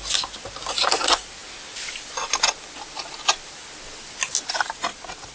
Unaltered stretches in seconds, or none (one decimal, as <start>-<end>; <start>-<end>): 0.0-5.3